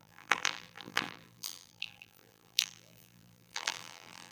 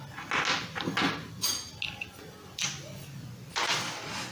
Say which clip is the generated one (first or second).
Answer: first